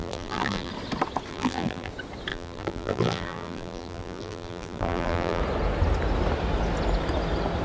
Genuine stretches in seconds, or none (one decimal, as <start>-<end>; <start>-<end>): 0.7-1.3; 1.9-2.3; 5.4-7.6